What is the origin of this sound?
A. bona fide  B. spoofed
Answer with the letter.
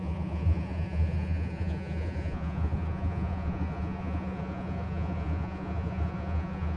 B